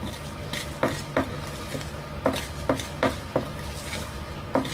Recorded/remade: recorded